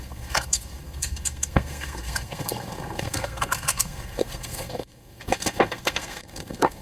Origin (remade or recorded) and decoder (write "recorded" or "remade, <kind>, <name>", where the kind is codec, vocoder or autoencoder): remade, codec, SNAC